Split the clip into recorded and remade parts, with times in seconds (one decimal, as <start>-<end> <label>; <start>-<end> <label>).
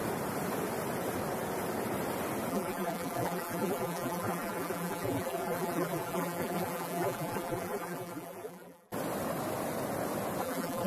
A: 0.0-2.5 recorded; 2.5-8.9 remade; 8.9-10.4 recorded; 10.4-10.9 remade